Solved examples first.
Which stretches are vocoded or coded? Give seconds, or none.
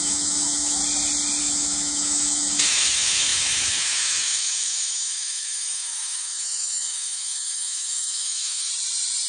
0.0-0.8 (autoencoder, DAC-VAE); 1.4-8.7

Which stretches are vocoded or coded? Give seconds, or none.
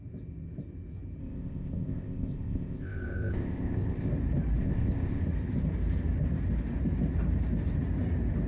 1.2-4.1 (codec, ZipCodec); 4.6-5.2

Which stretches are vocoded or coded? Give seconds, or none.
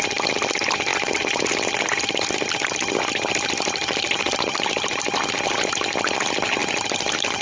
none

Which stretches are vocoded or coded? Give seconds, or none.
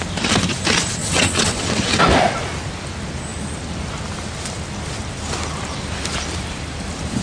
1.0-2.0 (vocoder, WaveNeXt)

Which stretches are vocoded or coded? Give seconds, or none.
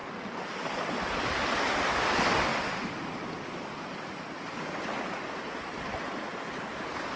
none